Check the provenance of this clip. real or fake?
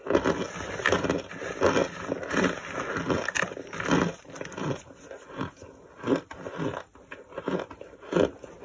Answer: real